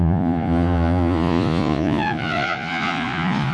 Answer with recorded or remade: remade